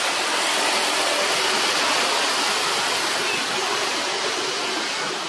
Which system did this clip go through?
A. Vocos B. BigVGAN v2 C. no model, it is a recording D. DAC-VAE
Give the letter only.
C